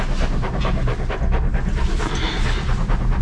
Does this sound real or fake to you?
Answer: real